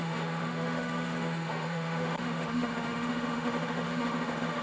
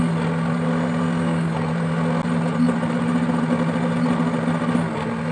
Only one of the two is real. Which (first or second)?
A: second